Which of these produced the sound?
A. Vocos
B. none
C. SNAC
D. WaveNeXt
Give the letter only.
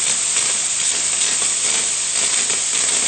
B